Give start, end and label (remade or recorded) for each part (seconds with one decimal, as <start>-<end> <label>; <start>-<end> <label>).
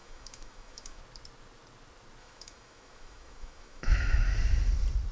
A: 0.0-1.0 remade; 1.0-2.2 recorded; 2.2-4.2 remade; 4.2-5.1 recorded